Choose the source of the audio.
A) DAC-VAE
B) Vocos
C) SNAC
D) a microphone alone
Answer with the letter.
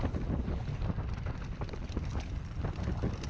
D